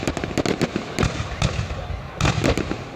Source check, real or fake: real